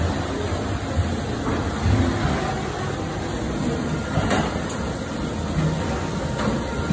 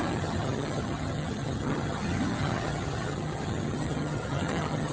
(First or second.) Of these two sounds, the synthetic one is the second